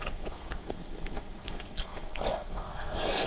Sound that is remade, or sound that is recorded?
remade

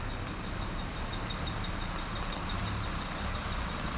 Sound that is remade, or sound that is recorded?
recorded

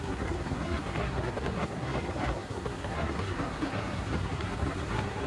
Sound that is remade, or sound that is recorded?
remade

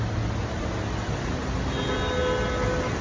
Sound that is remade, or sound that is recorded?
recorded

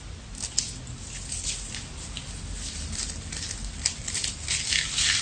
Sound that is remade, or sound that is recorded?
recorded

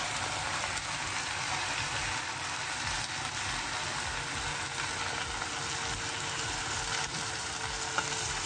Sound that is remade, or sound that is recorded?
recorded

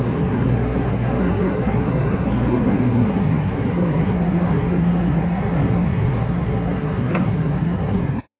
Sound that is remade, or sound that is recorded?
remade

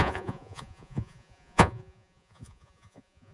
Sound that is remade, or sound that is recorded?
remade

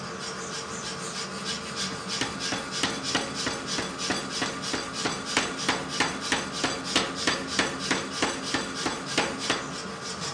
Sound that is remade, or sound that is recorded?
recorded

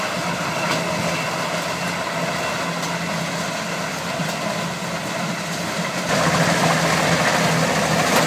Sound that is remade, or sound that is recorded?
recorded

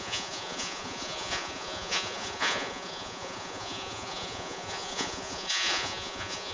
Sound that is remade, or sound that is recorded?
remade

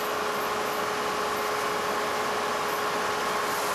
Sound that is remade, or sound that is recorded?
recorded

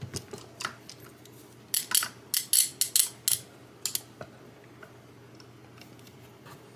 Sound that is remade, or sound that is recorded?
recorded